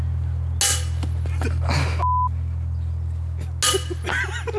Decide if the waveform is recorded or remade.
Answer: recorded